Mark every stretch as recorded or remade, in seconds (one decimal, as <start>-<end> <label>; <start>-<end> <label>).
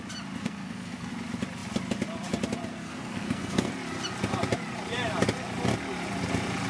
0.0-0.4 recorded; 0.4-1.1 remade; 1.1-2.7 recorded; 2.7-3.7 remade; 3.7-6.7 recorded